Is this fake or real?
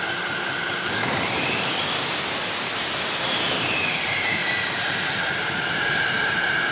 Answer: fake